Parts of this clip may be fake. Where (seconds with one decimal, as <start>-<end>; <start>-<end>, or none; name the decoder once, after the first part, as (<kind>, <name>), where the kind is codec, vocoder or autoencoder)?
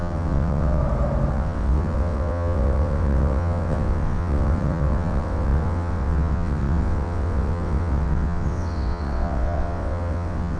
0.0-0.8 (vocoder, WaveNeXt); 1.3-10.6